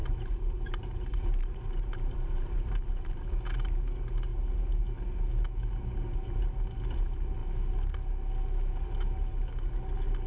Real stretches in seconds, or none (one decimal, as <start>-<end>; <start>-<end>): 3.4-4.3; 4.8-10.3